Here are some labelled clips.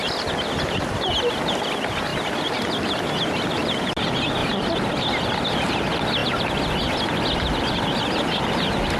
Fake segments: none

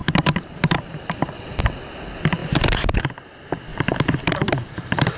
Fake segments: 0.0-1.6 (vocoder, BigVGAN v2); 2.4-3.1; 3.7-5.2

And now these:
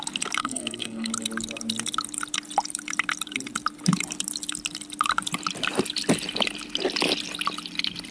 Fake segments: 0.4-1.1 (codec, SNAC)

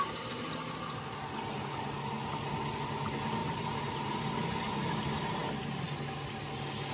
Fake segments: none

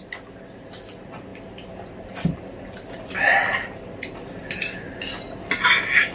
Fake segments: none

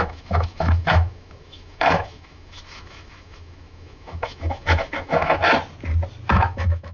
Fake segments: 0.0-5.4 (autoencoder, DAC-VAE); 6.3-6.9

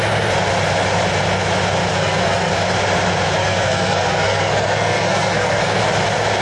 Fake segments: 1.9-2.5 (codec, SNAC); 3.4-5.8